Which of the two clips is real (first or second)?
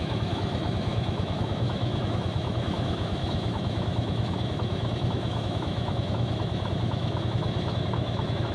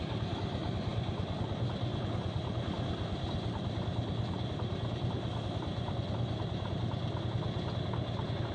second